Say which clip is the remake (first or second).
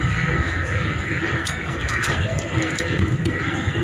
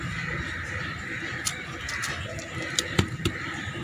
first